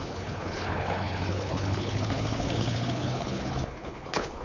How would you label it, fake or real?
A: fake